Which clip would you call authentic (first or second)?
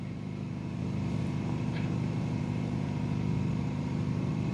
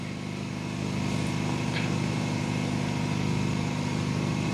second